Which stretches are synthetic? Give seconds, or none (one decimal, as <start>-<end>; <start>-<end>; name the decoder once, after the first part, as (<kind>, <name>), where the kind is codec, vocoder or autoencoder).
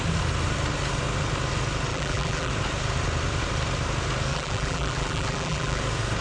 1.9-2.5 (vocoder, BigVGAN v2); 4.3-5.8